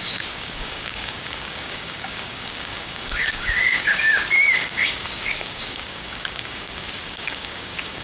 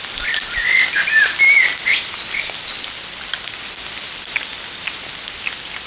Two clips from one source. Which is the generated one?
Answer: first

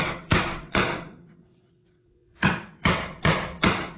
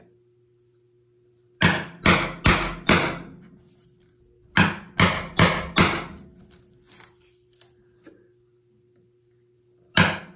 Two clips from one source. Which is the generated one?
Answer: first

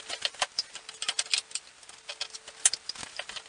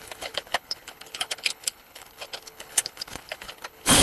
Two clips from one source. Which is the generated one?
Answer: second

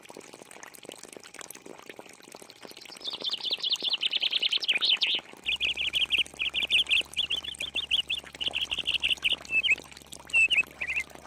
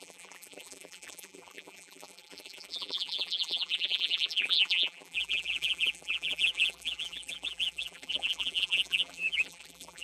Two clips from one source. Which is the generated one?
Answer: second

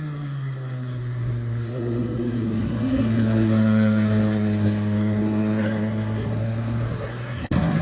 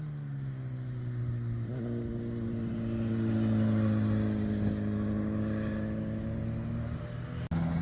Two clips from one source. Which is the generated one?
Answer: first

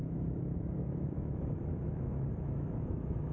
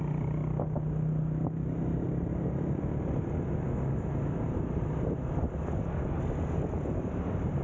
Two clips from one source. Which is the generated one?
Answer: first